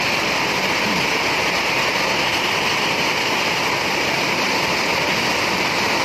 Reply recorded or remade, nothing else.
recorded